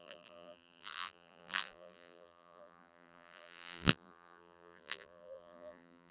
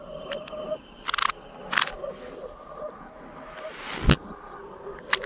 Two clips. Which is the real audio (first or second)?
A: second